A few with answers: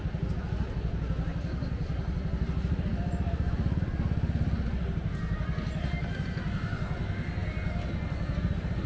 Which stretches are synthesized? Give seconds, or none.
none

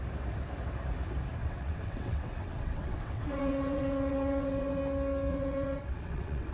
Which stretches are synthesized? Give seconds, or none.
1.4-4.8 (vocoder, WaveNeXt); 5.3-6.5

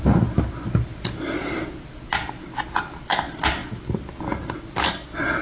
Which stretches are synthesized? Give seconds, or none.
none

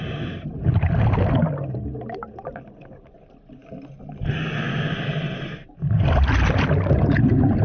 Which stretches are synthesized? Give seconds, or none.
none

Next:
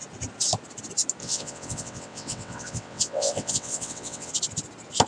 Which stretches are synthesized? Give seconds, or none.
1.2-4.3 (vocoder, WaveNeXt)